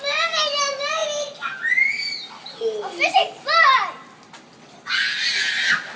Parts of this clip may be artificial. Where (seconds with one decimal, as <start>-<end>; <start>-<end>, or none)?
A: none